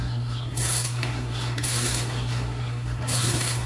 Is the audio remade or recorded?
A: remade